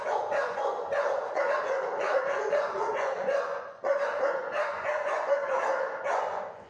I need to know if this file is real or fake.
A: fake